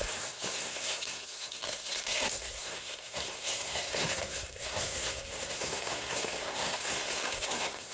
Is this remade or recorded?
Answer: remade